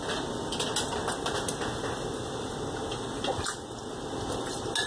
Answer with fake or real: real